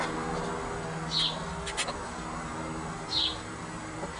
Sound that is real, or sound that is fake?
real